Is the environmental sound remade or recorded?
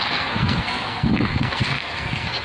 remade